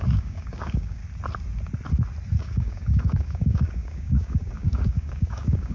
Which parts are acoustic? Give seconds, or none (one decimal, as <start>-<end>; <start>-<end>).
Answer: 1.0-2.4